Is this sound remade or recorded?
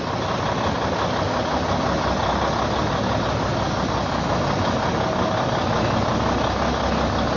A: recorded